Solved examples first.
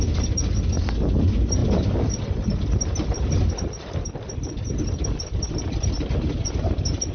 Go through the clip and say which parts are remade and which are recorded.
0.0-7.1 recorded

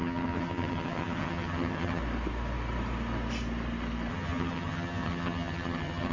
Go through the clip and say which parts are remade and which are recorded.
0.0-2.0 remade; 2.0-4.1 recorded; 4.1-6.1 remade

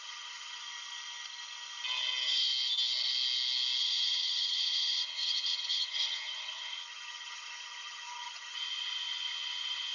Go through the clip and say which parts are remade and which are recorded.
0.0-0.6 remade; 0.6-3.8 recorded; 3.8-9.9 remade

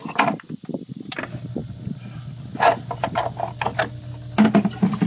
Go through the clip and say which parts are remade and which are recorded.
0.0-5.1 recorded

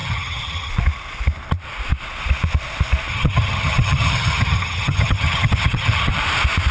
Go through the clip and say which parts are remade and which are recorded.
0.0-0.7 remade; 0.7-3.1 recorded; 3.1-6.2 remade; 6.2-6.7 recorded

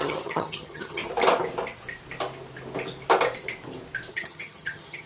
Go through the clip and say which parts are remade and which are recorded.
0.0-1.0 remade; 1.0-4.1 recorded; 4.1-5.1 remade

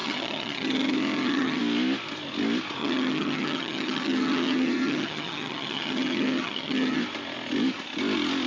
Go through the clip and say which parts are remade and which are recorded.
0.0-1.6 remade; 1.6-2.8 recorded; 2.8-7.0 remade; 7.0-8.5 recorded